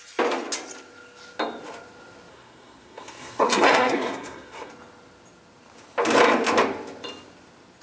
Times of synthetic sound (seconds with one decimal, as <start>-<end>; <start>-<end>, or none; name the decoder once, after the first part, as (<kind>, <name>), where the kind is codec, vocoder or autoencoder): 2.3-4.7 (codec, SNAC)